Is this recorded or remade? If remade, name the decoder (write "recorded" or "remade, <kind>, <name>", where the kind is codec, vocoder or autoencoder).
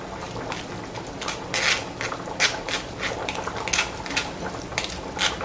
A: recorded